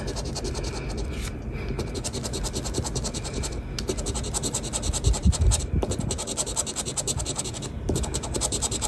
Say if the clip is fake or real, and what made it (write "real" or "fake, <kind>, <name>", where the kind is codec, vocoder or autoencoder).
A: real